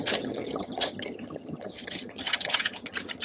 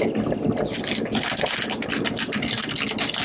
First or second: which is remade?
first